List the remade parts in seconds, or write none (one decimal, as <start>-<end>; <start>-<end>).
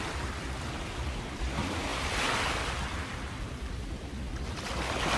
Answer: none